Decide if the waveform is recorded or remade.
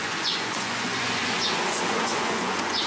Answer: remade